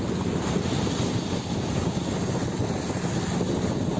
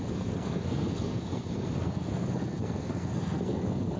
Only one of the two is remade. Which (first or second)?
second